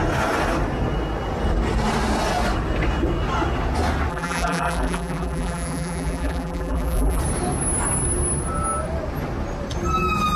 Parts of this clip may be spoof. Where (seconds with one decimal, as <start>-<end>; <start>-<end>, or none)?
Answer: 4.1-7.2